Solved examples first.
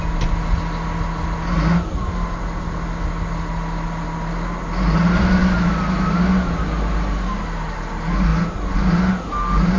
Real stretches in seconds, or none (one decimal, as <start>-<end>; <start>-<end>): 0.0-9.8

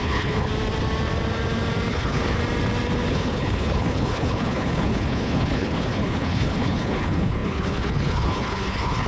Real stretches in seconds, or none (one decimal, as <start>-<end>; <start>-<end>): 0.5-1.9; 2.4-3.1

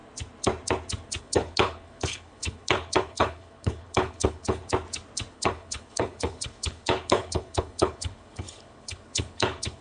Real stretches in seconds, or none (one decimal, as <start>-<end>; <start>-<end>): 0.0-1.2; 4.6-5.3

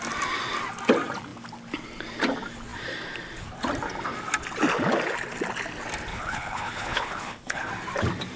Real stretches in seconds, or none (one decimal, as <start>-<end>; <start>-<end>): 0.0-6.1; 7.7-8.4